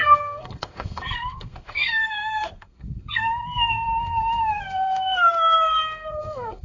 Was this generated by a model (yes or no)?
yes